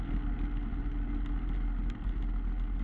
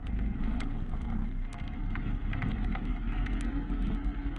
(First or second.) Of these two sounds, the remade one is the second